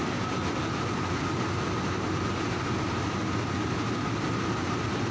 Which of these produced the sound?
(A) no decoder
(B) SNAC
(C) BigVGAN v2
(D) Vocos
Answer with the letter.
A